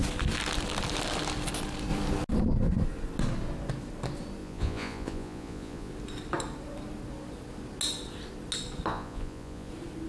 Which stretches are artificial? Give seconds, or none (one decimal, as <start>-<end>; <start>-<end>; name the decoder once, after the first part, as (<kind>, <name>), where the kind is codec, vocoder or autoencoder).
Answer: 4.4-5.9 (vocoder, Vocos); 8.9-9.7